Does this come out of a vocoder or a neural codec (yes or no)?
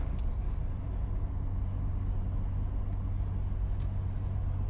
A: no